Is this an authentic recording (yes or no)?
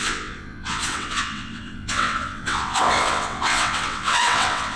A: no